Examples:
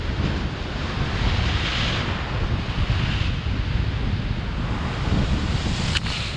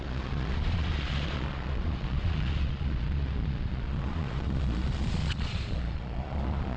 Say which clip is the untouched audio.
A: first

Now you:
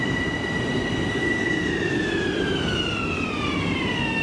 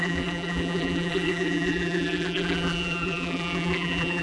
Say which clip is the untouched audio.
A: first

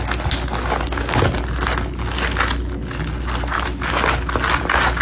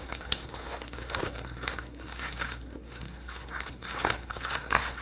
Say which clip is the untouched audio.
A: first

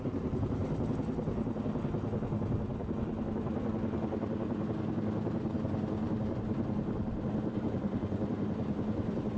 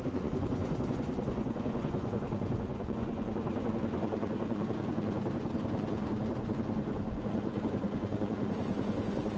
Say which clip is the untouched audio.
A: first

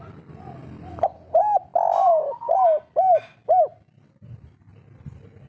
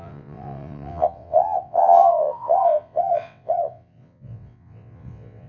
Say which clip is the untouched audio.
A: first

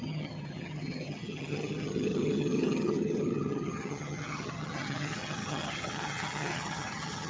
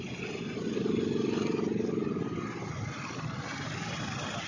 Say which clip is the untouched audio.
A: second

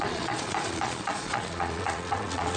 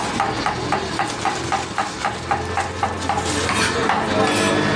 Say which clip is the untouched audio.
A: second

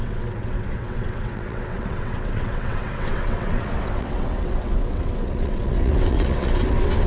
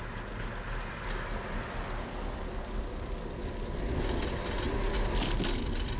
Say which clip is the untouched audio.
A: second